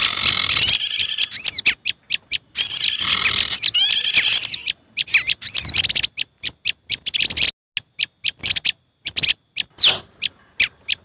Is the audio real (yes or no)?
yes